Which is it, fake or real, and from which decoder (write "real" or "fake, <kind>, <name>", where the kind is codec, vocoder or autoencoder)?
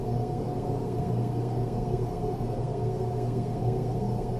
fake, codec, SNAC